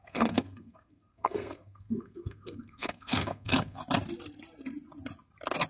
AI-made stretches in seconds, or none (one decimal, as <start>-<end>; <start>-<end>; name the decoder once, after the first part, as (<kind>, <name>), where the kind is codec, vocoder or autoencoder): 0.0-3.8 (codec, SNAC)